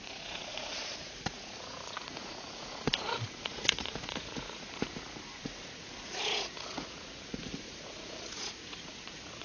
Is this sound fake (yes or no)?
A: yes